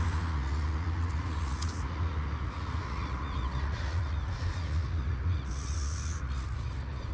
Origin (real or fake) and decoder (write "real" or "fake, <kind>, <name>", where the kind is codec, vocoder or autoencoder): fake, vocoder, Vocos